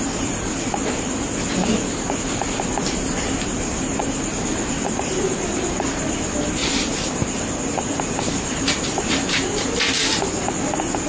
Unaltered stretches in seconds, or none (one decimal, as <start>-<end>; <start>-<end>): 0.0-11.1